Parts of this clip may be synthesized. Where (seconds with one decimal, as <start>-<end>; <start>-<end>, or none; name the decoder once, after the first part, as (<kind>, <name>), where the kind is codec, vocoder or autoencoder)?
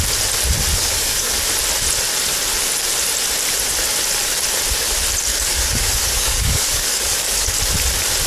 0.7-1.3 (codec, DAC); 5.3-7.6